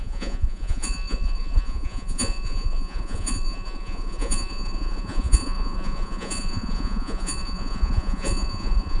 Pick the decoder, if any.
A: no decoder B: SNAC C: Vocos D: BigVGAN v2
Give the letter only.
C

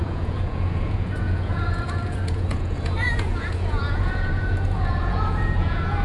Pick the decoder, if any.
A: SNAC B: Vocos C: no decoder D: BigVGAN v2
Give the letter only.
B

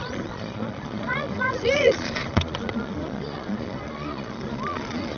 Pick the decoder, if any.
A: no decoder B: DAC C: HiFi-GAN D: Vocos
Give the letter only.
D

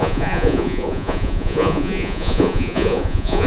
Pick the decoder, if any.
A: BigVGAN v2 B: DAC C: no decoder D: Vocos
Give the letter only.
D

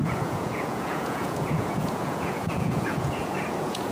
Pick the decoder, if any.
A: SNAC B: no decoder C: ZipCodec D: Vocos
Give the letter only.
D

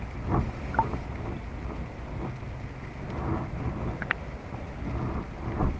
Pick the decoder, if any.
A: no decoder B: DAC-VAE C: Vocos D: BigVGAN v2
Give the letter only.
A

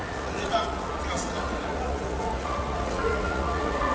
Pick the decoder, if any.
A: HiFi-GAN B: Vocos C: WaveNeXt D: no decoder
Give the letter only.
B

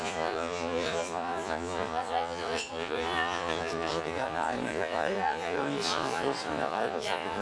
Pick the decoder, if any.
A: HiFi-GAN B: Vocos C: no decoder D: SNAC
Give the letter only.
B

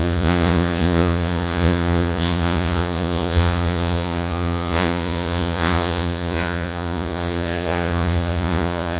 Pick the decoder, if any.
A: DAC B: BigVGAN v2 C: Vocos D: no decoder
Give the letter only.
C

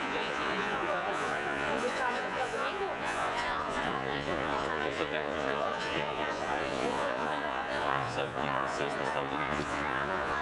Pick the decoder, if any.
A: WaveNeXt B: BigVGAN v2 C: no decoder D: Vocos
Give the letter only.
D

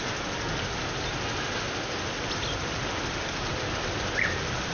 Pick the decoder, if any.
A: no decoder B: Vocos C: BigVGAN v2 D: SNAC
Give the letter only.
A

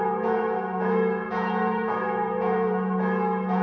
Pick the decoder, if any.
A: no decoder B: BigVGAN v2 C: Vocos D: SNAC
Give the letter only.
C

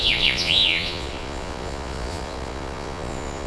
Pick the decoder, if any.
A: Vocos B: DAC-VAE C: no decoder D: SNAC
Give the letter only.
A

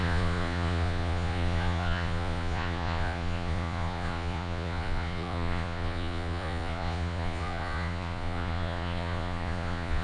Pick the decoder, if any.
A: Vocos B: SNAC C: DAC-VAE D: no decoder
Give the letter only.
A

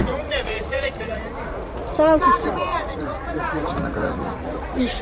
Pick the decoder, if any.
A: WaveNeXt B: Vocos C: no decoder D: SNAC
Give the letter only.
B